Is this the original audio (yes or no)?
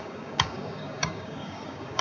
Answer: no